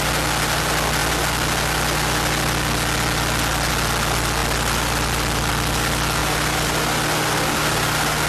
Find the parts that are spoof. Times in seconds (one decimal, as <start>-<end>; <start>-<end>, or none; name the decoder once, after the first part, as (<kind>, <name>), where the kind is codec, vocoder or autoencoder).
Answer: 4.4-5.5 (vocoder, BigVGAN v2); 6.2-8.3